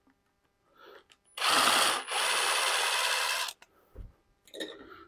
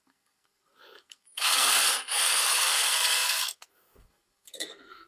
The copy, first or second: second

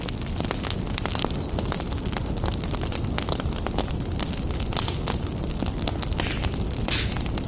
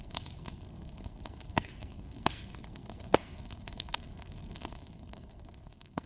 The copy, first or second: second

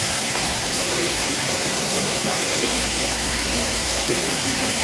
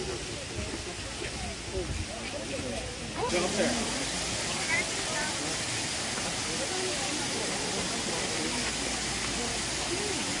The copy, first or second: first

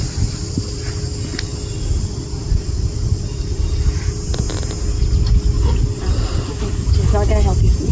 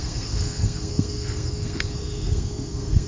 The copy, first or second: second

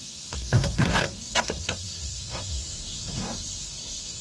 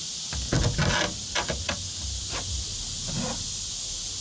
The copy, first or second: first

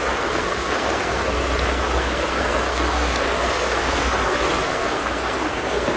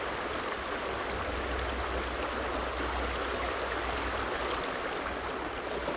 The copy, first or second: first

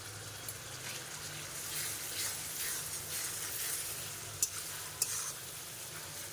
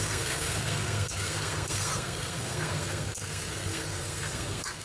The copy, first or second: second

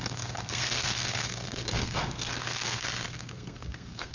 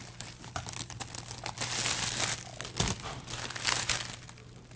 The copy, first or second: first